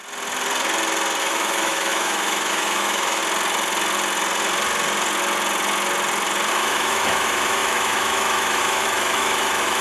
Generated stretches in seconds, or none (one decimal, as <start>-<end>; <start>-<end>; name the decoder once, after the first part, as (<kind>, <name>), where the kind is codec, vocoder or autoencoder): 1.2-3.2 (autoencoder, DAC-VAE); 6.5-9.8